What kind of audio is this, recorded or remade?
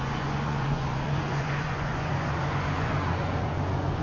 remade